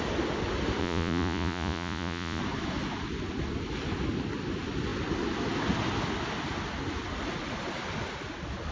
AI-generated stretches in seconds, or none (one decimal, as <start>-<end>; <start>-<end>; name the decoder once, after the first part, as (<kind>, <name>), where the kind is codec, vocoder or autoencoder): 0.8-2.4 (vocoder, Vocos)